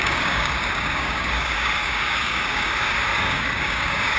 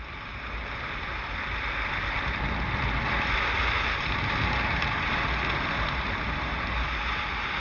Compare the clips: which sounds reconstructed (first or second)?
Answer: first